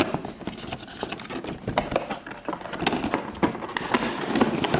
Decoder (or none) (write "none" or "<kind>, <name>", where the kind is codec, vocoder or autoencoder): none